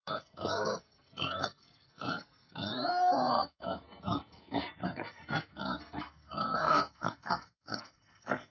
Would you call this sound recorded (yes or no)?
no